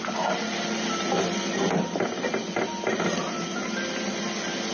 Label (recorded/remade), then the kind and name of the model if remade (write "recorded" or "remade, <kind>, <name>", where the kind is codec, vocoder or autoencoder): recorded